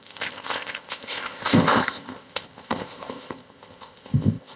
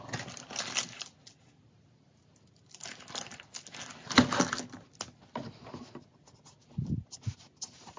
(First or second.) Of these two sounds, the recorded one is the second